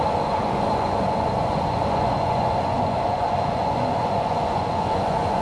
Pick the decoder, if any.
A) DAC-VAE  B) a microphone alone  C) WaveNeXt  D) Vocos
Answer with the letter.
D